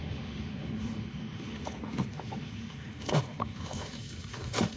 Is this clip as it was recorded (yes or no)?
no